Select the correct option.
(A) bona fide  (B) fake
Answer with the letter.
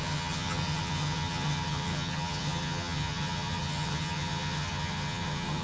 B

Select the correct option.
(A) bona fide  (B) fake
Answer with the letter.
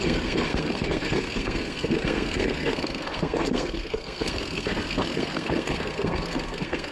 B